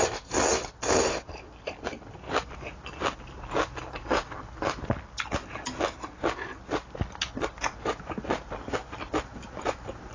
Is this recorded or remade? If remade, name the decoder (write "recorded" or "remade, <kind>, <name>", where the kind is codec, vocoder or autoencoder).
recorded